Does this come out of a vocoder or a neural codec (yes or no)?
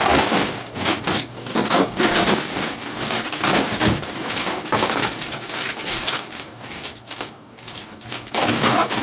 yes